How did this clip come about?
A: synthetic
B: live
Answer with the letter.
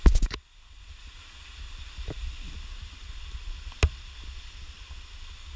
B